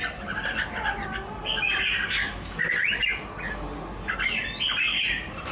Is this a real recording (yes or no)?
no